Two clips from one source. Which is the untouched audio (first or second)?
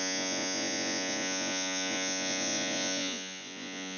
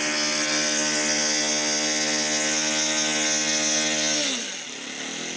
second